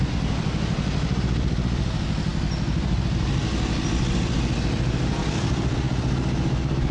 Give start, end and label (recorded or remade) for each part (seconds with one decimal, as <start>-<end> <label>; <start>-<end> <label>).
0.0-6.9 recorded